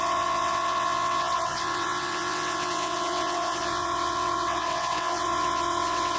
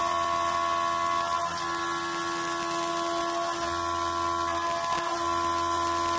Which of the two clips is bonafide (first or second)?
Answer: second